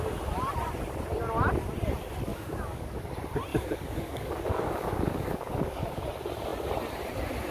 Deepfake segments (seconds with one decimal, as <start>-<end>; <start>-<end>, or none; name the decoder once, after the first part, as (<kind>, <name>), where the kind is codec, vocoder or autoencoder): 2.3-3.0 (codec, DAC); 3.5-6.0

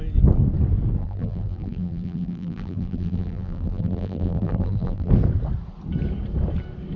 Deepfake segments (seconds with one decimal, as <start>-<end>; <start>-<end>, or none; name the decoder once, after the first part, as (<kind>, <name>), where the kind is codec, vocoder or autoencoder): 1.0-5.1 (vocoder, BigVGAN v2)

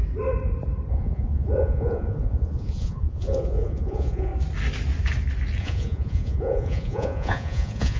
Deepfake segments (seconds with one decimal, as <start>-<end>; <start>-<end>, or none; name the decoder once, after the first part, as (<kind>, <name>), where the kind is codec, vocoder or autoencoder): 0.9-4.3 (vocoder, Vocos); 5.6-8.0

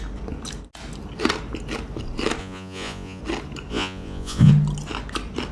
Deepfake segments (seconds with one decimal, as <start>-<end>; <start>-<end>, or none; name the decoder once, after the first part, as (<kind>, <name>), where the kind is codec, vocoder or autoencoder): 2.4-3.2 (vocoder, Vocos); 3.7-4.5

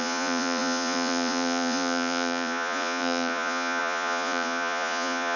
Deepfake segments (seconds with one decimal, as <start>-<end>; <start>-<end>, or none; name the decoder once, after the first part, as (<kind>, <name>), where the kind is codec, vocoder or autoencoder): 0.0-5.4 (vocoder, Vocos)